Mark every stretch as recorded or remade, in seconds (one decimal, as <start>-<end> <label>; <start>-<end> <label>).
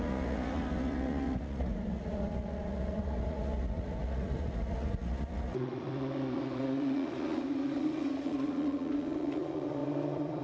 0.0-10.4 remade